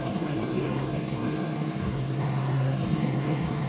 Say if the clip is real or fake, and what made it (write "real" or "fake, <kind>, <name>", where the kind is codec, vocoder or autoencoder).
fake, codec, SNAC